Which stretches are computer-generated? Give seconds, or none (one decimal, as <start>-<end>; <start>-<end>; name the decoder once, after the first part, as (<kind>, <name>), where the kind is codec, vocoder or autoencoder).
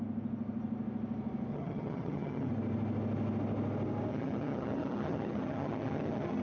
1.5-2.5 (vocoder, HiFi-GAN); 4.1-6.4